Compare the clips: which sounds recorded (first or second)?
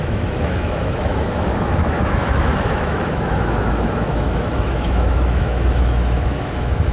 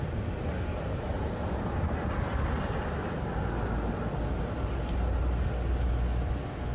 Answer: second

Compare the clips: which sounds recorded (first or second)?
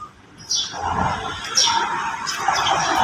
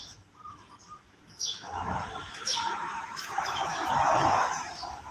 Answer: first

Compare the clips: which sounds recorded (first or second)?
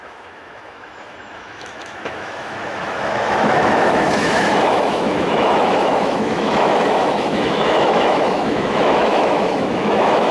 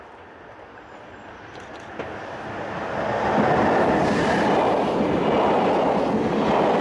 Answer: second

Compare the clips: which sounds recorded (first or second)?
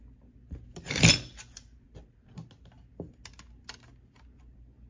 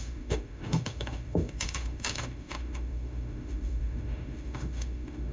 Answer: first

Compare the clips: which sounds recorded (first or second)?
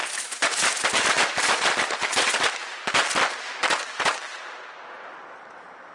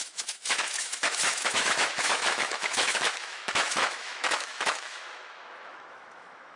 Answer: first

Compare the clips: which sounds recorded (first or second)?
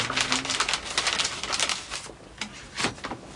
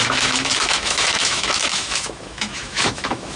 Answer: first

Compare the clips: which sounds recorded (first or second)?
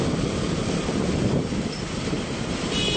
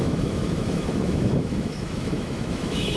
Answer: first